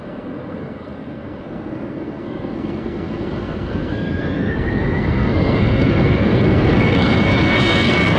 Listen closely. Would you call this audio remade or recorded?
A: remade